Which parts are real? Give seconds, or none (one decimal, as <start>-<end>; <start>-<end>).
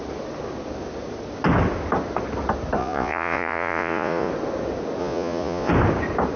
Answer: 0.0-2.8; 4.3-5.0; 5.7-6.4